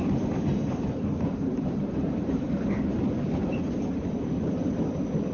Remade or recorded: remade